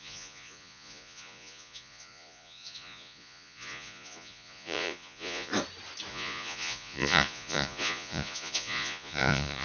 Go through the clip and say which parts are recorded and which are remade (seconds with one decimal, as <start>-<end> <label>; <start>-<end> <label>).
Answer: 0.0-5.5 remade; 5.5-6.1 recorded; 6.1-9.6 remade